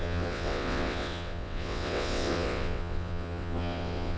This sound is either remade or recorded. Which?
remade